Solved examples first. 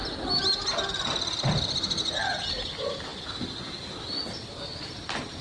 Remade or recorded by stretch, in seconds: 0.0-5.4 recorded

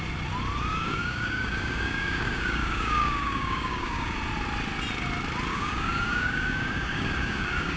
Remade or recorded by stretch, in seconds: 0.0-0.7 recorded; 0.7-4.1 remade; 4.1-5.5 recorded; 5.5-7.8 remade

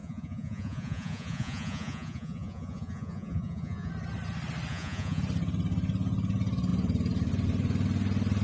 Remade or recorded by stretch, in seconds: 0.0-3.9 remade; 3.9-4.7 recorded; 4.7-5.2 remade; 5.2-8.4 recorded

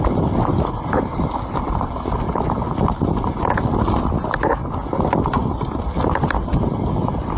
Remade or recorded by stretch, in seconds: 0.0-7.4 recorded

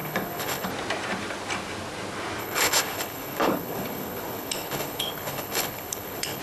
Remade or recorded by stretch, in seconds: 0.0-0.7 remade; 0.7-2.4 recorded; 2.4-6.4 remade